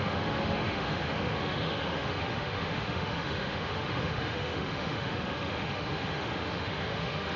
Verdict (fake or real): fake